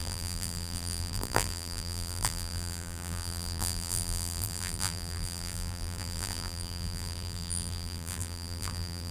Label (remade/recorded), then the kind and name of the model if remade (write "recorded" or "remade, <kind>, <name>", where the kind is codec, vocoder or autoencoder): remade, vocoder, BigVGAN v2